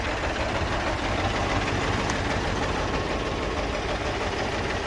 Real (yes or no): no